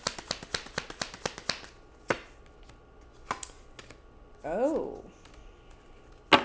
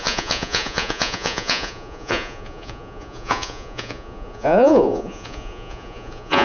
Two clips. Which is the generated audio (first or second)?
second